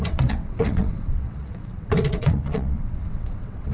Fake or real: fake